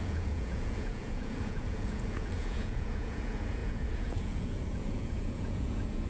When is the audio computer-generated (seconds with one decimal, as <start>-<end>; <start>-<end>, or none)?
0.0-6.1